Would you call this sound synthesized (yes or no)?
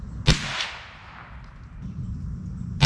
no